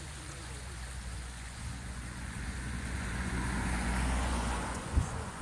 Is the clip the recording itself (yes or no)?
no